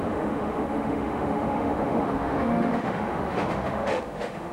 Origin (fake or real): fake